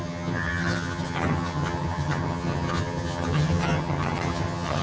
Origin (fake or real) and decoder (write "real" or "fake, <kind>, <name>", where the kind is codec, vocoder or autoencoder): fake, vocoder, HiFi-GAN